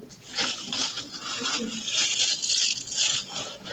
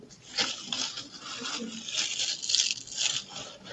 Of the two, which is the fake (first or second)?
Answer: first